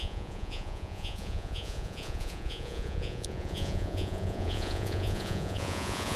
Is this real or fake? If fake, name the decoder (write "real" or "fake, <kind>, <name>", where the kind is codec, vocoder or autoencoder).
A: fake, vocoder, Vocos